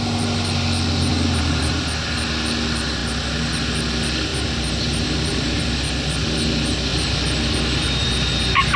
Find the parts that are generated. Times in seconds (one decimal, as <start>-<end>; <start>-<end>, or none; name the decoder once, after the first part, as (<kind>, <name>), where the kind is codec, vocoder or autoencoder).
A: 1.1-1.7 (vocoder, BigVGAN v2); 4.3-5.6